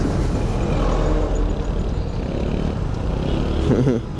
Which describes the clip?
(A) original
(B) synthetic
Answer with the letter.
A